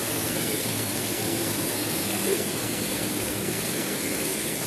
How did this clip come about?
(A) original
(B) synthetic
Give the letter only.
B